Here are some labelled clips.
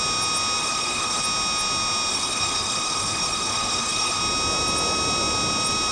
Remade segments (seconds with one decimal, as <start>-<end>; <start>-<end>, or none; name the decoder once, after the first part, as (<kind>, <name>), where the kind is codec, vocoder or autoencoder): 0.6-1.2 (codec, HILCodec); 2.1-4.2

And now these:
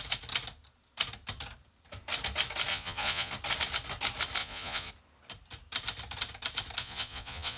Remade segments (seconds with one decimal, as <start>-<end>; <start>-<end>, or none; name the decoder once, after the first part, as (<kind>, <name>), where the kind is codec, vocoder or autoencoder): 2.7-3.3 (vocoder, Vocos); 4.4-4.9; 6.8-7.6

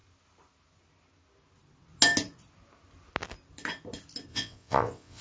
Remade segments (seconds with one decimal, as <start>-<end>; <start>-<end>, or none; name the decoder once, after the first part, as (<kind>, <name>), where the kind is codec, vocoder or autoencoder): 4.3-5.2 (vocoder, WaveNeXt)